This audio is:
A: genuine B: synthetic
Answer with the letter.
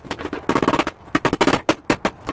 A